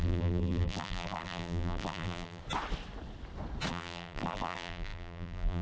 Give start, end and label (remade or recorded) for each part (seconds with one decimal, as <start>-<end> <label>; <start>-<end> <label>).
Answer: 0.0-2.4 remade; 2.4-3.7 recorded; 3.7-5.6 remade